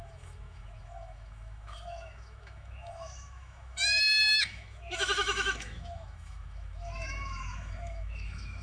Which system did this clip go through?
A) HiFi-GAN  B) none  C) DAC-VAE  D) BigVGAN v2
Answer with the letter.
C